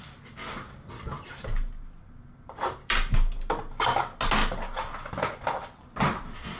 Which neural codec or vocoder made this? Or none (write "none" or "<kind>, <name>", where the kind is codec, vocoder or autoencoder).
none